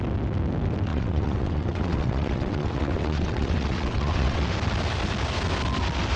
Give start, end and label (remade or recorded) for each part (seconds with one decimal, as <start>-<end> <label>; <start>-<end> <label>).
0.0-0.9 recorded; 0.9-4.4 remade; 4.4-6.2 recorded